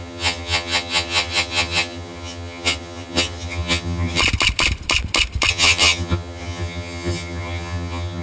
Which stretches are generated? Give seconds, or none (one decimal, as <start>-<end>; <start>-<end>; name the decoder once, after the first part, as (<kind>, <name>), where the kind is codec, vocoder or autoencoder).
0.0-4.2 (vocoder, HiFi-GAN); 5.5-8.2